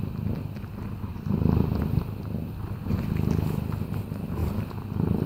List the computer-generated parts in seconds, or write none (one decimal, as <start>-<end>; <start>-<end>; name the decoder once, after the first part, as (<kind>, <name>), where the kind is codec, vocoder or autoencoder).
1.1-1.8 (vocoder, BigVGAN v2); 4.4-5.3

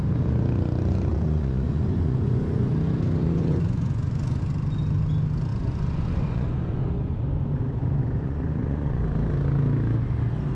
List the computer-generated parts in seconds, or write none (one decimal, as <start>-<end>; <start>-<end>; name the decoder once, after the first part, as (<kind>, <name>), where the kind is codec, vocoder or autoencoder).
1.1-2.7 (vocoder, Vocos); 3.2-4.4; 5.5-6.8; 7.8-9.0

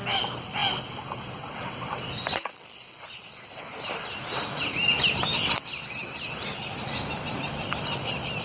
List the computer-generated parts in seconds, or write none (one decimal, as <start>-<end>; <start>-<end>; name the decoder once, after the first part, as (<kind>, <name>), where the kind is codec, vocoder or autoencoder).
none

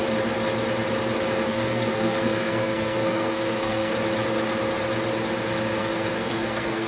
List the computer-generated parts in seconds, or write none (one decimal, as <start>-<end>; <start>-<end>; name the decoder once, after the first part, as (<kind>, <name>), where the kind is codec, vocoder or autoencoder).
1.5-3.9 (codec, SNAC); 5.8-6.9

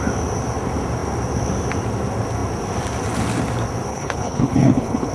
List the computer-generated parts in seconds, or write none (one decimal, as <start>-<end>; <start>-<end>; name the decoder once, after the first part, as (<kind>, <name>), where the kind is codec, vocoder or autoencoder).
3.9-5.1 (codec, HILCodec)

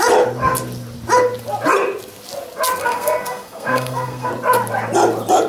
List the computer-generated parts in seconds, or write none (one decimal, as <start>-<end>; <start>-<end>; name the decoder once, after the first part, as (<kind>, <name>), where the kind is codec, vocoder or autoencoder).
2.8-4.3 (codec, SNAC)

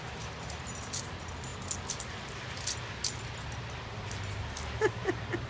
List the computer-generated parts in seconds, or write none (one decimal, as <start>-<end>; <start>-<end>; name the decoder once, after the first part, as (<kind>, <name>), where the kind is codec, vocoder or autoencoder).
none